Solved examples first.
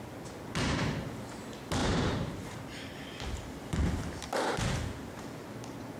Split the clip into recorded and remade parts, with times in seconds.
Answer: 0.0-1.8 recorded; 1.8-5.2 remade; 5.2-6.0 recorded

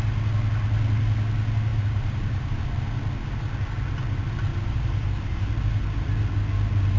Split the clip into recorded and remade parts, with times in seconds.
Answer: 0.0-1.7 recorded; 1.7-2.6 remade; 2.6-4.5 recorded; 4.5-5.5 remade; 5.5-7.0 recorded

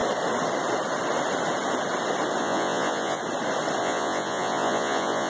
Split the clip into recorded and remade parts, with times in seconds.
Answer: 0.0-2.4 recorded; 2.4-3.2 remade; 3.2-3.8 recorded; 3.8-5.3 remade

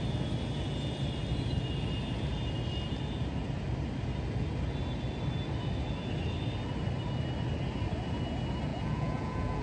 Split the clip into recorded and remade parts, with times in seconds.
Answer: 0.0-8.7 recorded; 8.7-9.6 remade

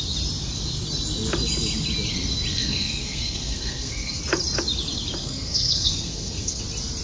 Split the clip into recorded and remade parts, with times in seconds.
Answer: 0.0-2.5 recorded; 2.5-4.2 remade; 4.2-5.2 recorded; 5.2-6.6 remade; 6.6-7.0 recorded

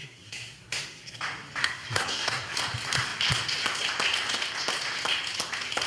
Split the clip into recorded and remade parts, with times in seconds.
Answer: 0.0-1.2 remade; 1.2-1.6 recorded; 1.6-2.6 remade; 2.6-5.9 recorded